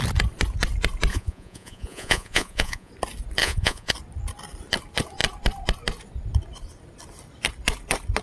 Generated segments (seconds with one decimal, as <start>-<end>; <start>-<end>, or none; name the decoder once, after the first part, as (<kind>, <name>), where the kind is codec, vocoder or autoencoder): 1.1-2.9 (vocoder, Vocos); 3.4-3.9

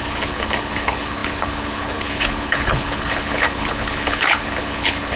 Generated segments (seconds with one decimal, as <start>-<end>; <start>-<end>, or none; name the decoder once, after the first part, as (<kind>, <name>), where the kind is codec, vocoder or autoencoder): 0.0-5.2 (codec, HILCodec)

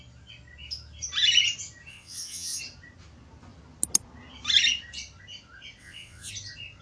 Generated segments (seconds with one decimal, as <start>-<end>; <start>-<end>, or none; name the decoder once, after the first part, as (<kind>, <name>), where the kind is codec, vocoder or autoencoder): 1.9-2.6 (vocoder, WaveNeXt); 5.8-6.3

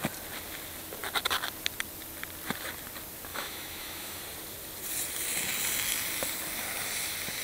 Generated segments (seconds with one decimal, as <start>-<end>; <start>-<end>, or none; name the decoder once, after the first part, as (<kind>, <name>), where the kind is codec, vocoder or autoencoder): 3.3-4.2 (autoencoder, DAC-VAE)

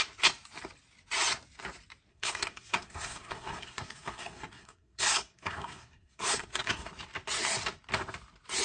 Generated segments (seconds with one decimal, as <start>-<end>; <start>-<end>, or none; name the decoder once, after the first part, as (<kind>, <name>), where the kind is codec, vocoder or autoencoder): 2.1-6.9 (codec, SNAC)

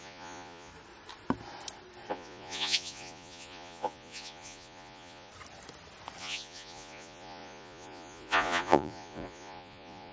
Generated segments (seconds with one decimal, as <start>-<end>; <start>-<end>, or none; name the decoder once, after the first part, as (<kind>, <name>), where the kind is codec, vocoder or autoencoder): 0.0-0.7 (vocoder, Vocos); 2.1-5.3; 6.2-10.1

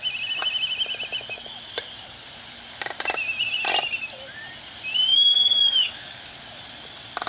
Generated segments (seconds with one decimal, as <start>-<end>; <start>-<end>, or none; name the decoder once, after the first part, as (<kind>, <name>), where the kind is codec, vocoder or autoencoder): 5.1-6.4 (codec, DAC)